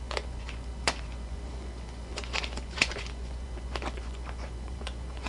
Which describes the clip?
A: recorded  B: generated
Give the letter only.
B